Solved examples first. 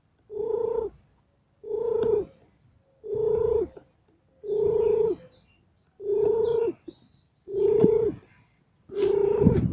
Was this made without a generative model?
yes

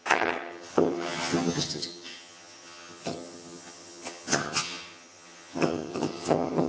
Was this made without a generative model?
no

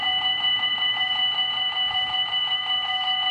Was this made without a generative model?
no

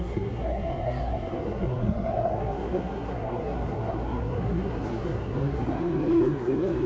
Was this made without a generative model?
no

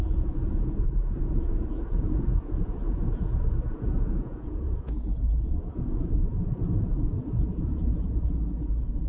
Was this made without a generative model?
no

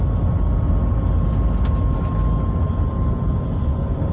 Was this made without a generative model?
yes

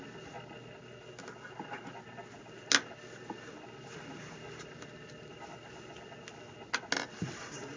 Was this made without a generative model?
yes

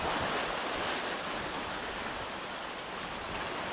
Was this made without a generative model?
yes